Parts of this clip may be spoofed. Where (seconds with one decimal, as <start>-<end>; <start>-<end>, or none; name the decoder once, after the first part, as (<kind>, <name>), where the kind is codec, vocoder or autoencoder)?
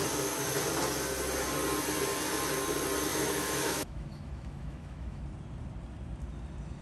3.1-5.2 (autoencoder, DAC-VAE)